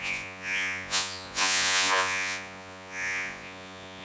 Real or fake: fake